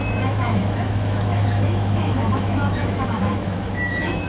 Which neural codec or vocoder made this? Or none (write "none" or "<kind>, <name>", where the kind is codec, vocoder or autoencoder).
autoencoder, DAC-VAE